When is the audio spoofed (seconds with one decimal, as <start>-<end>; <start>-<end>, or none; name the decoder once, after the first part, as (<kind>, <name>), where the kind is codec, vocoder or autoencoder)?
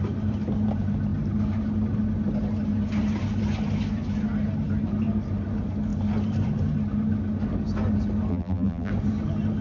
8.3-8.9 (vocoder, BigVGAN v2)